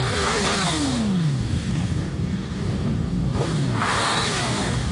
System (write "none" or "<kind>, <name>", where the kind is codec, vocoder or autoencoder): codec, DAC